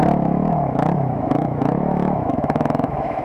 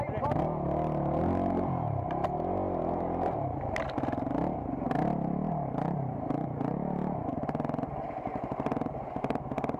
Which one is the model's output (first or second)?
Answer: first